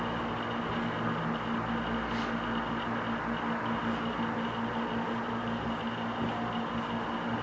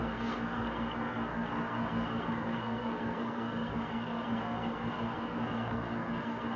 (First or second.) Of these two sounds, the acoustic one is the first